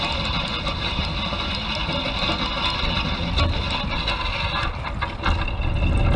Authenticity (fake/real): real